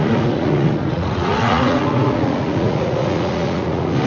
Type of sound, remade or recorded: remade